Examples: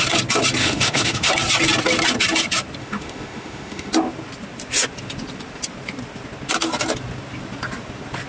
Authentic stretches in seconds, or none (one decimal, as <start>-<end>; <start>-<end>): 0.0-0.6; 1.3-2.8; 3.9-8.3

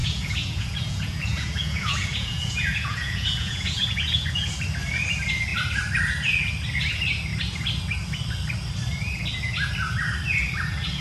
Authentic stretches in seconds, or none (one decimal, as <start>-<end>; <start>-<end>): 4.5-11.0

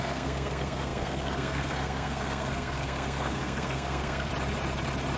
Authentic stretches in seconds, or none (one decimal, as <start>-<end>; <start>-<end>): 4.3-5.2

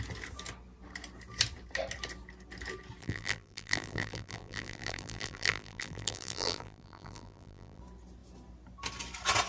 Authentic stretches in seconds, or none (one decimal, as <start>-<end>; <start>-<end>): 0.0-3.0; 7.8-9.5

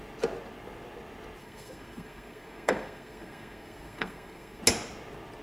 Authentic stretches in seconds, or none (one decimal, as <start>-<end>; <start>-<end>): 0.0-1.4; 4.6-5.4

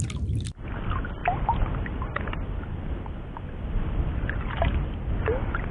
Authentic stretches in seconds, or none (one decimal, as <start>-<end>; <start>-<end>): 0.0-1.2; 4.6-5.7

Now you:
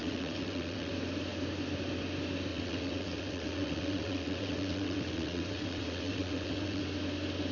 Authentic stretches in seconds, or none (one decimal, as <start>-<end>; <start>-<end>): 0.9-2.5; 6.8-7.5

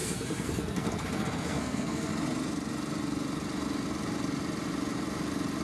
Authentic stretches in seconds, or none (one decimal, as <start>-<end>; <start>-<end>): 2.1-5.6